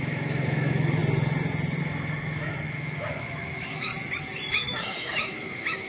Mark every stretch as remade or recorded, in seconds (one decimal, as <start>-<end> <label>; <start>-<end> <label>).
0.0-1.0 remade; 1.0-1.8 recorded; 1.8-3.9 remade; 3.9-4.5 recorded; 4.5-5.9 remade